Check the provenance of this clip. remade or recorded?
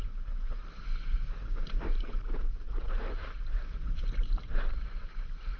remade